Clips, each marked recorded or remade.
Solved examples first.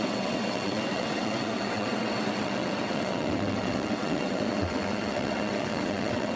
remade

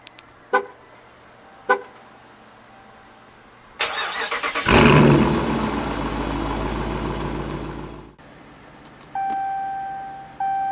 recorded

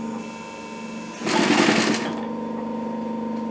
recorded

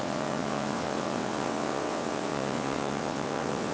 remade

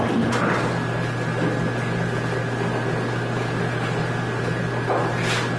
recorded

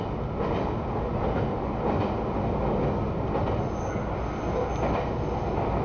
recorded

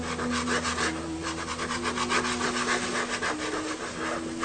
recorded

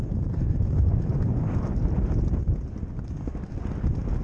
recorded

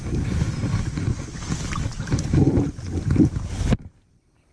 recorded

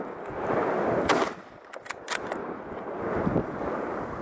recorded